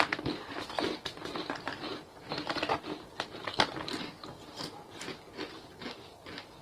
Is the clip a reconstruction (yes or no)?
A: no